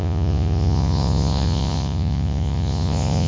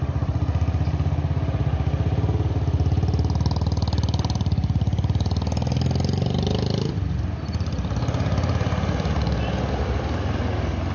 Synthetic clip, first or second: first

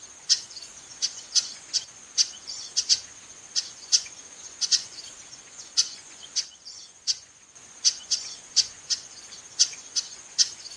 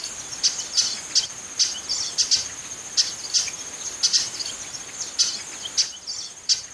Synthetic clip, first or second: first